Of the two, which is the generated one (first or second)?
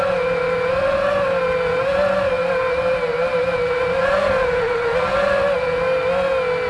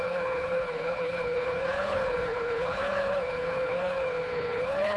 second